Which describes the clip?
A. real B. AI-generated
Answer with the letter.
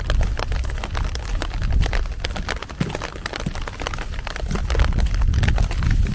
A